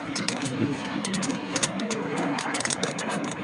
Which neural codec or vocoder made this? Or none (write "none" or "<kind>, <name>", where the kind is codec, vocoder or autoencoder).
codec, SNAC